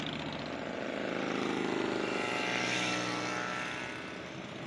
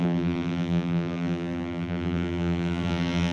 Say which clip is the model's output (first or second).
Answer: second